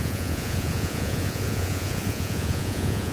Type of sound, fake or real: fake